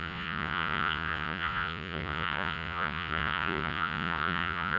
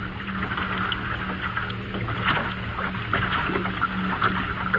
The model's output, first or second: first